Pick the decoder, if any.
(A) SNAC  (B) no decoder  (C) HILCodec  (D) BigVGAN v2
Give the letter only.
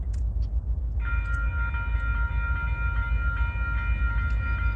B